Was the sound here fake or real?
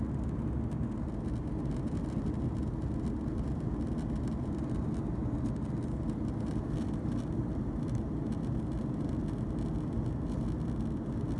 real